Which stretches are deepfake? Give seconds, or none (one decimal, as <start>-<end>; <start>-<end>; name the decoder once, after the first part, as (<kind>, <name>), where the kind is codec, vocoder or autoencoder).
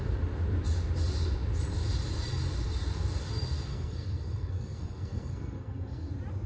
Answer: 3.7-6.1 (codec, SNAC)